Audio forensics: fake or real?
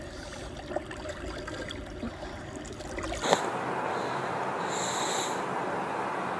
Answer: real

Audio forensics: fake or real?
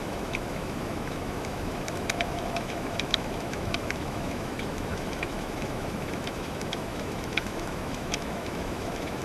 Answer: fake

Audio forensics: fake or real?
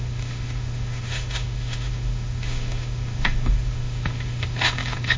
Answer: fake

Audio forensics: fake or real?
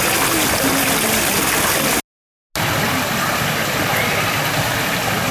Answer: real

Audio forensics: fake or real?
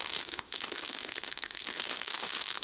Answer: fake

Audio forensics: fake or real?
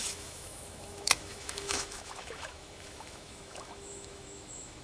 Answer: fake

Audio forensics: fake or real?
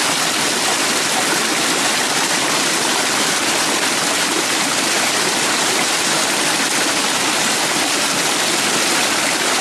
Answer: real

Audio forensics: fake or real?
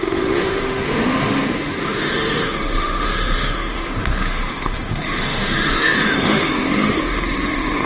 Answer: fake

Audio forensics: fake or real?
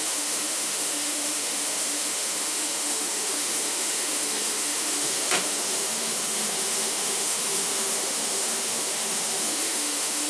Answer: fake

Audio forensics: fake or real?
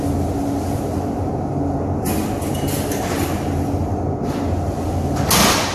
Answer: real